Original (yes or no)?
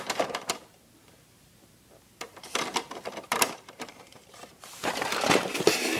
no